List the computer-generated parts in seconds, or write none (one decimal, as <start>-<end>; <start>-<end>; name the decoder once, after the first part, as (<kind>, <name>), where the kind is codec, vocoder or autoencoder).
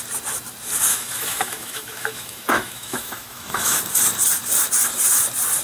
0.9-3.8 (autoencoder, DAC-VAE)